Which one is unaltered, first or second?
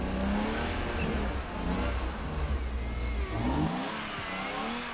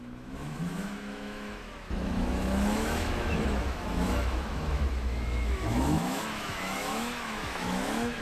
first